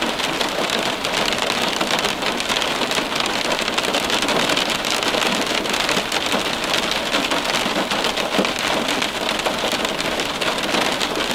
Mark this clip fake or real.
real